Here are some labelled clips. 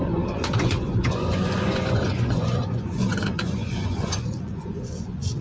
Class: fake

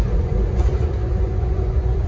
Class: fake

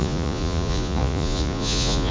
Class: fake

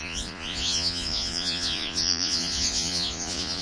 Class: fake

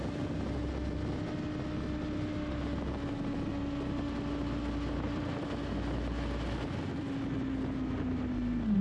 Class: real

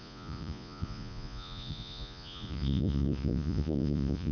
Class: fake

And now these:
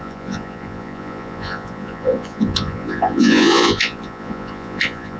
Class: fake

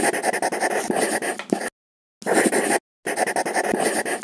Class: real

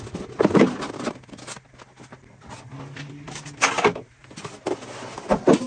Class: real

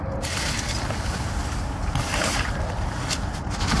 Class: real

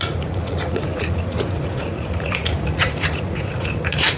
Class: fake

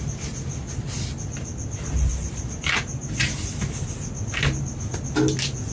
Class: real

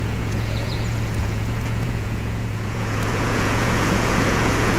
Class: fake